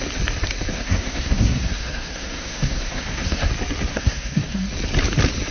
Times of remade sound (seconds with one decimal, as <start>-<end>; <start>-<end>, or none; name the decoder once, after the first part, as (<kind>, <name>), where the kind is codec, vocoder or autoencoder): 0.7-3.5 (codec, SNAC); 3.9-4.7